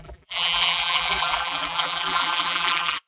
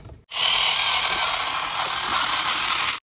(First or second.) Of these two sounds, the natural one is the second